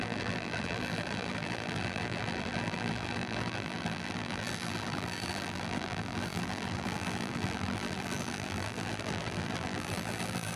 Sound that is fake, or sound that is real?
fake